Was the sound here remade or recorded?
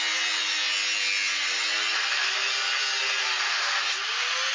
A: recorded